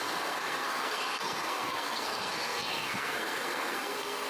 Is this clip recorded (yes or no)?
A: no